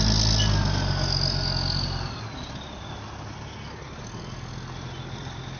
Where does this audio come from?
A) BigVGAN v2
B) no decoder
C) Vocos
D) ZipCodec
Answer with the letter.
B